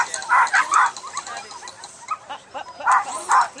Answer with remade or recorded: recorded